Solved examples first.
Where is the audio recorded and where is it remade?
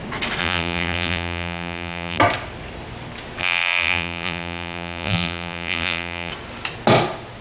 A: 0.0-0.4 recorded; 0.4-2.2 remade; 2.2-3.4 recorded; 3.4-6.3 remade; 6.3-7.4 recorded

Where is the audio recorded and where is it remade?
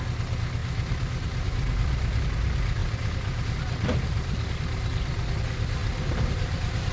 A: 0.0-0.6 recorded; 0.6-2.2 remade; 2.2-2.8 recorded; 2.8-5.3 remade; 5.3-5.8 recorded; 5.8-6.9 remade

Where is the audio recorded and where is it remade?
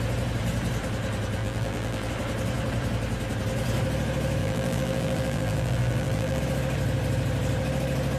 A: 0.0-1.4 recorded; 1.4-2.1 remade; 2.1-4.4 recorded; 4.4-6.4 remade; 6.4-8.2 recorded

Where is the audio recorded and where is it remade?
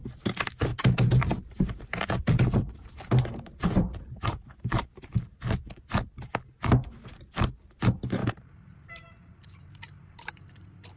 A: 0.0-0.7 recorded; 0.7-5.8 remade; 5.8-8.2 recorded; 8.2-10.3 remade; 10.3-11.0 recorded